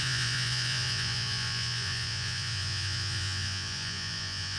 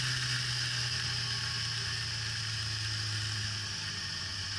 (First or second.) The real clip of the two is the second